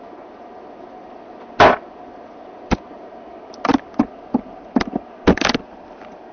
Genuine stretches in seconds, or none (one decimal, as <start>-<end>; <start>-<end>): 0.0-6.3